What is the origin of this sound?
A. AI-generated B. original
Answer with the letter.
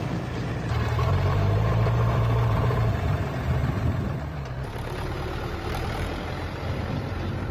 A